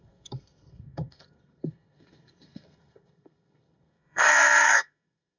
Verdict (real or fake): fake